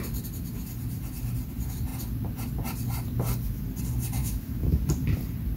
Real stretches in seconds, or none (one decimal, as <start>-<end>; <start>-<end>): 0.0-4.2; 4.8-5.6